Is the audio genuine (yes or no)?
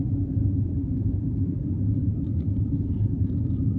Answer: no